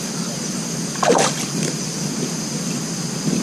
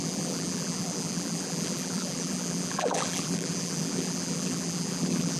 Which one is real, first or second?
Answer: first